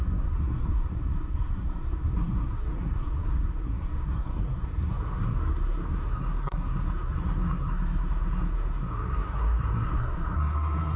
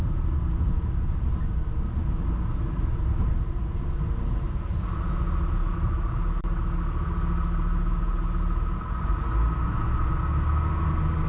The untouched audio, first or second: second